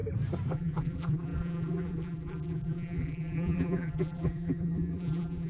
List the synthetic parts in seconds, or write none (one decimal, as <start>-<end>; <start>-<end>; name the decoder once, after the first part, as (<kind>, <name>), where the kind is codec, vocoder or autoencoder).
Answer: 0.5-5.5 (vocoder, BigVGAN v2)

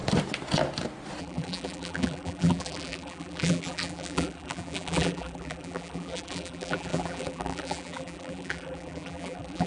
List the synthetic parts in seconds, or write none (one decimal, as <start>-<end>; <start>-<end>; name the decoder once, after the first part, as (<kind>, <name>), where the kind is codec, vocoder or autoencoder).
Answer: 1.2-9.7 (vocoder, BigVGAN v2)

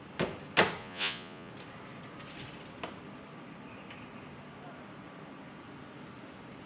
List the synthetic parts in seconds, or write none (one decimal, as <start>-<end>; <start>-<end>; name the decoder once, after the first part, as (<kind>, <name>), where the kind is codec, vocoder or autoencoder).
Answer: 0.8-1.5 (vocoder, Vocos)

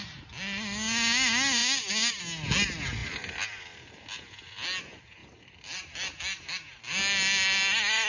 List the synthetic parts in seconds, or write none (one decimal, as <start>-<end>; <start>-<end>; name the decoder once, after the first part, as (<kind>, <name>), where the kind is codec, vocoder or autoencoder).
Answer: none

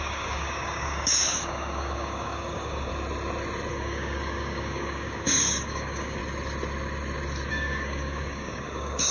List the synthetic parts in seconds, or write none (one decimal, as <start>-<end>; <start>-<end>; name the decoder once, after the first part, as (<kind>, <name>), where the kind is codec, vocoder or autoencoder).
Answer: 0.0-2.9 (codec, DAC); 3.7-6.2; 7.5-9.1

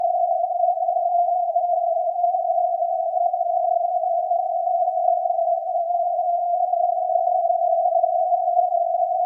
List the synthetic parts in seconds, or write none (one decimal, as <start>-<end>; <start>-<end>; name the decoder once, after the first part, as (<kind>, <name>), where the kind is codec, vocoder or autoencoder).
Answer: 1.1-2.4 (vocoder, BigVGAN v2); 5.7-6.6